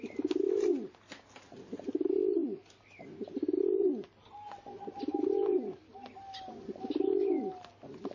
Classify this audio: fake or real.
real